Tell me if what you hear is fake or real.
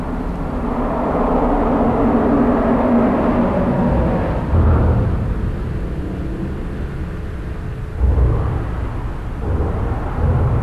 real